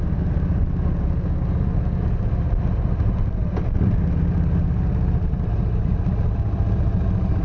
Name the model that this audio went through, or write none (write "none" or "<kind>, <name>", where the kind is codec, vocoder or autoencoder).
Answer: none